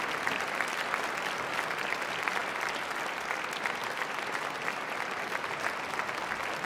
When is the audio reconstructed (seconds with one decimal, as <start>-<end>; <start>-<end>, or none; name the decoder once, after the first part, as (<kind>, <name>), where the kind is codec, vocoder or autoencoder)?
none